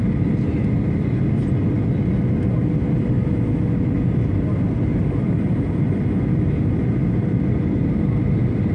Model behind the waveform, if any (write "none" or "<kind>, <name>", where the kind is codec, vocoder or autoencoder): none